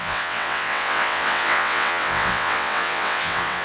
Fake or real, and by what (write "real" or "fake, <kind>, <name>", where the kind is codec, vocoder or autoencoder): fake, vocoder, WaveNeXt